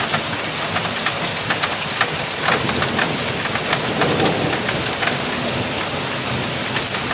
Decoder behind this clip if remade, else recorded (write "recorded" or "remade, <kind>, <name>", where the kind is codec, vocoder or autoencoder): recorded